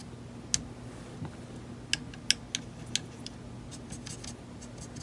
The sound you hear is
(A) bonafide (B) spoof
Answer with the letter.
A